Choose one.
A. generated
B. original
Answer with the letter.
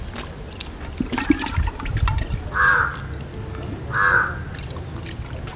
B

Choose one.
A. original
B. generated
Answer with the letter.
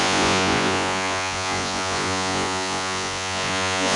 B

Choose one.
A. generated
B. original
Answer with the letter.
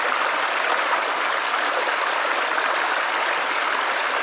B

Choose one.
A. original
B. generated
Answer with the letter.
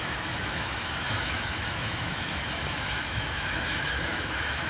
B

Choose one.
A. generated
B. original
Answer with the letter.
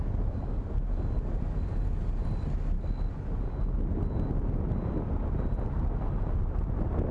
B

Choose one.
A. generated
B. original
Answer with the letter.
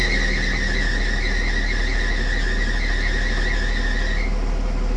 B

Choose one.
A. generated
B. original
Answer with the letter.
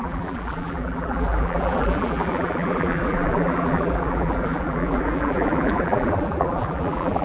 A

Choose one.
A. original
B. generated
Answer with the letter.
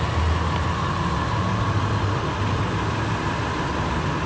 A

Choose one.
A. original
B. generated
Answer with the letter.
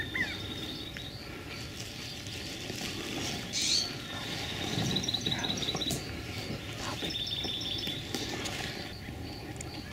A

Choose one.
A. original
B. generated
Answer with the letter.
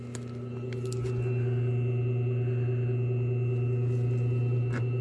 A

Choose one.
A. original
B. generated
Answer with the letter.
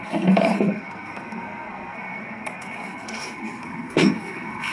B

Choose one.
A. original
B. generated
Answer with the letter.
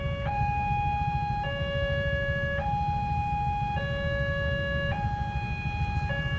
A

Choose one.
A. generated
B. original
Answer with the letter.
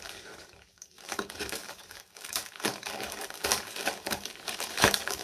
A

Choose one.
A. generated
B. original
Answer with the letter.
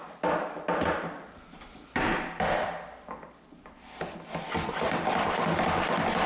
B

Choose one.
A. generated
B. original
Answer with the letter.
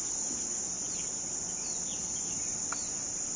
B